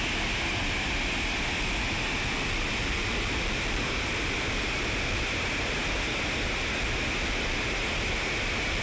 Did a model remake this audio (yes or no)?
no